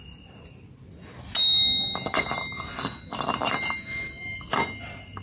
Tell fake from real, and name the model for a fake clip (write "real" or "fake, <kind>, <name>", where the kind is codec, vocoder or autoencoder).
real